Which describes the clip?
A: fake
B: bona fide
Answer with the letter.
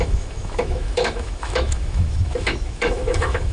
A